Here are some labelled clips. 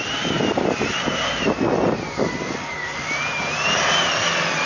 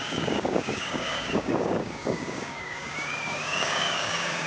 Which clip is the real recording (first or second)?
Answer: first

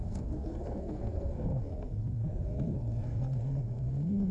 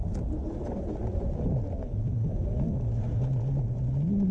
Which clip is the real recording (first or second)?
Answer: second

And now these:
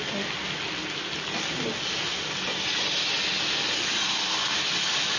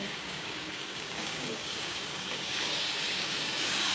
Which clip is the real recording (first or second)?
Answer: first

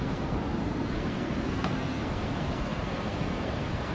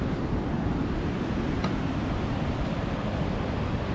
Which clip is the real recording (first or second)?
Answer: second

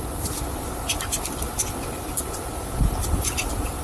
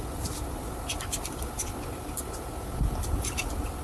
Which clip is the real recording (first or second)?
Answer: second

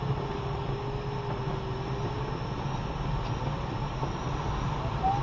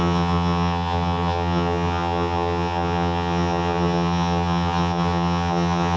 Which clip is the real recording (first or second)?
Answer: first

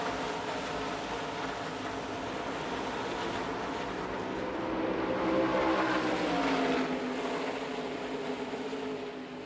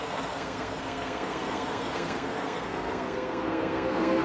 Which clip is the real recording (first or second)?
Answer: first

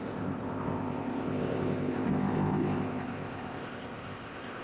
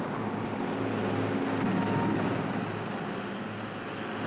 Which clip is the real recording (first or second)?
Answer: second